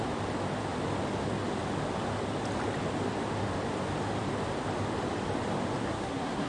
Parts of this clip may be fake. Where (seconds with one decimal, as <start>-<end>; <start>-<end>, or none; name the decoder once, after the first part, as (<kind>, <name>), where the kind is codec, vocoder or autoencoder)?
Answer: 5.8-6.5 (codec, SNAC)